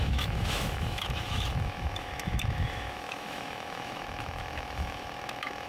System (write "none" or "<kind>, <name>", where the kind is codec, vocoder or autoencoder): autoencoder, DAC-VAE